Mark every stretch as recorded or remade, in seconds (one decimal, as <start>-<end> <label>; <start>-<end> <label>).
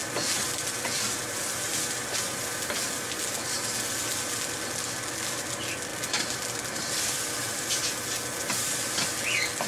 0.0-5.9 recorded; 5.9-7.7 remade; 7.7-9.7 recorded